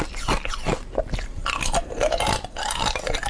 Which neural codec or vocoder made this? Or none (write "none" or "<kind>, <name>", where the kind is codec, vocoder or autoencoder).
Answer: none